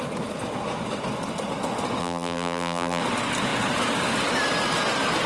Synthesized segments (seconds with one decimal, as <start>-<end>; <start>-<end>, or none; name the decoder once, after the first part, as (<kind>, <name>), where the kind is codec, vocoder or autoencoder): 2.0-3.0 (vocoder, BigVGAN v2)